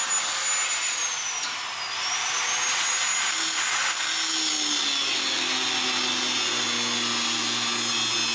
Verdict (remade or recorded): recorded